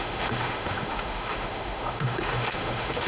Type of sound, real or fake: fake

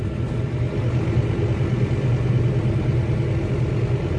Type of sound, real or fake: real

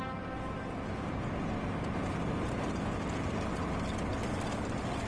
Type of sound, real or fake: real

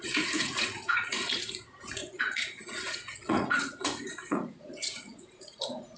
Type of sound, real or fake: fake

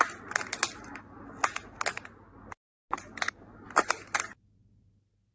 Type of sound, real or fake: real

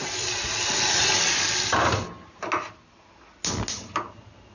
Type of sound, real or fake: real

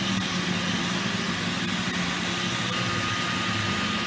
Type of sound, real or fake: real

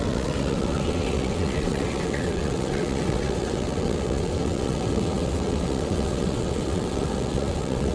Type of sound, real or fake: fake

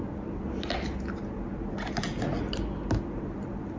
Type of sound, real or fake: real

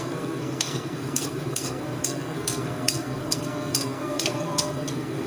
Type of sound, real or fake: fake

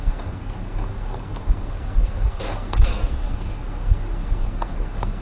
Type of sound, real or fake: fake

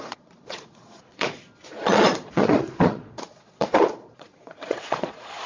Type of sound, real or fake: fake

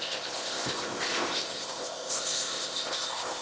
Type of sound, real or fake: fake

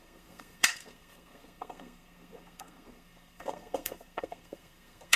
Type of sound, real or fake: fake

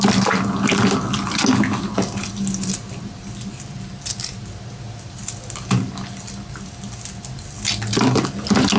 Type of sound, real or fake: real